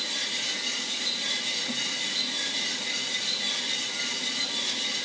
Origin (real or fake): real